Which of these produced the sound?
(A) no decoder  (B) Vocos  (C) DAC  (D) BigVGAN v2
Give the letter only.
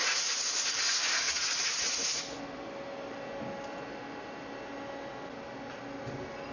A